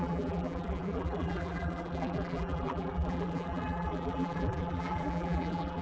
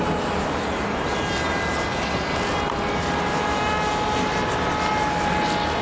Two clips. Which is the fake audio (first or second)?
first